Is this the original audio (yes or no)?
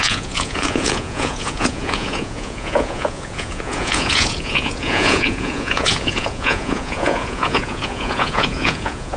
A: no